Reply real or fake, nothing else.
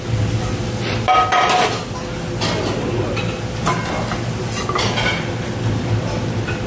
real